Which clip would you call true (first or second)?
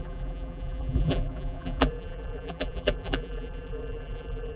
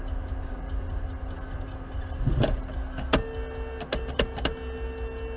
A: second